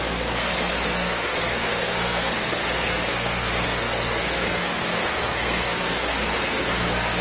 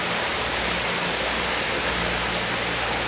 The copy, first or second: first